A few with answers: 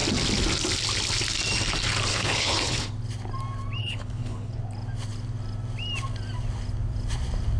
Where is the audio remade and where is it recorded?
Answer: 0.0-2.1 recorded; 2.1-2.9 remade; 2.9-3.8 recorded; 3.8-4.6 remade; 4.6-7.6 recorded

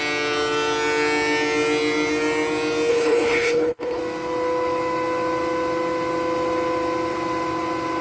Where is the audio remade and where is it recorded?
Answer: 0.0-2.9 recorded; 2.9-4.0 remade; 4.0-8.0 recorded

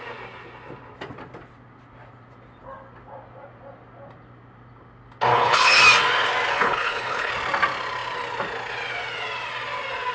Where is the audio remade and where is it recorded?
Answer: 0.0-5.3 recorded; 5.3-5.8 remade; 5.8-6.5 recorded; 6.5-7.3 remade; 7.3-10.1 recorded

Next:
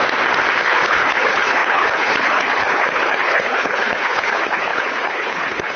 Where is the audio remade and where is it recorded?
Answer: 0.0-0.6 recorded; 0.6-5.8 remade

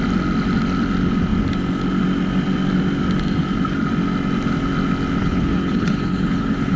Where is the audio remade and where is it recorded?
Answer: 0.0-5.2 recorded; 5.2-6.8 remade